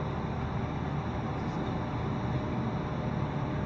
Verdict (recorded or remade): recorded